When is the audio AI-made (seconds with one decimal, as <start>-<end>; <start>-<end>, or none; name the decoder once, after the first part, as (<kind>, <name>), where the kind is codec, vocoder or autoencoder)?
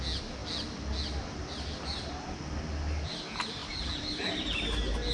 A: none